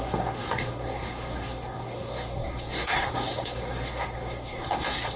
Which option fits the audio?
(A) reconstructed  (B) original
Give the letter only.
A